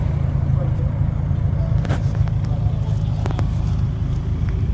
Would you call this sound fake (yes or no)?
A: no